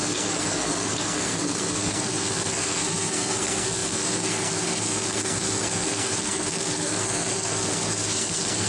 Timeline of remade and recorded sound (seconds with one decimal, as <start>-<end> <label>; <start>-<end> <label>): 0.0-8.7 remade